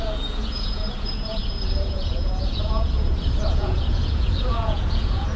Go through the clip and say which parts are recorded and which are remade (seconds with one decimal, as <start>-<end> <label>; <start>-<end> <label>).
0.0-5.4 remade